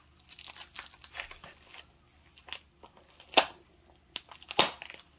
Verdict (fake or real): real